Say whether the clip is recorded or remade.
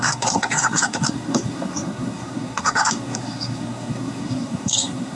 remade